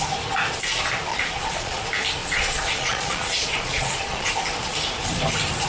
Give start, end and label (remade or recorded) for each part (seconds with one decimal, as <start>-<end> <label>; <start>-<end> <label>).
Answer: 0.0-1.1 recorded; 1.1-1.8 remade; 1.8-2.2 recorded; 2.2-4.3 remade; 4.3-5.7 recorded